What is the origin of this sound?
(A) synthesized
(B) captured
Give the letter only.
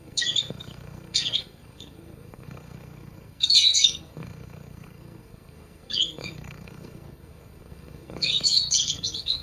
A